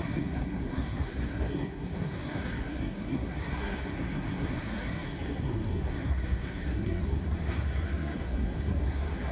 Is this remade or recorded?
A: remade